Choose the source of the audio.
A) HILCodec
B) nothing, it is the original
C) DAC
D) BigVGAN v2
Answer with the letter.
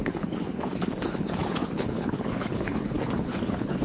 A